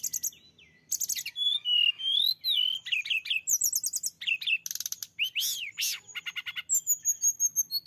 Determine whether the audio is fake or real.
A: real